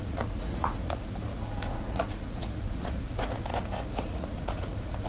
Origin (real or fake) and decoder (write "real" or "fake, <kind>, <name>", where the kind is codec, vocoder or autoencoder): fake, vocoder, Vocos